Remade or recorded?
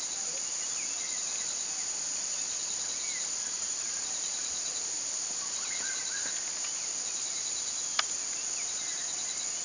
recorded